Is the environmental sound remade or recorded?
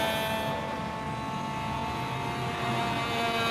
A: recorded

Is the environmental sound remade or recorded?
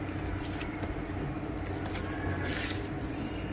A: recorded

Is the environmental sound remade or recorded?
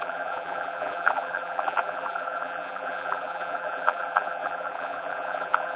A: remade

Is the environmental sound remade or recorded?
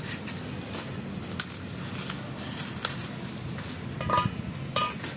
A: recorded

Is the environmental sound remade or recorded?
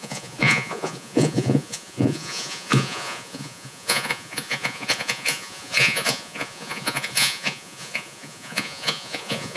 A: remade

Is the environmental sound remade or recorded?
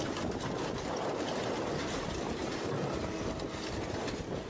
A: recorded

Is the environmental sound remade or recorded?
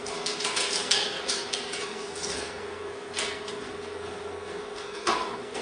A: remade